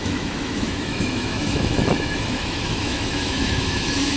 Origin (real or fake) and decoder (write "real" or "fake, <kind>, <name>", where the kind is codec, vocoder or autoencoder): fake, autoencoder, DAC-VAE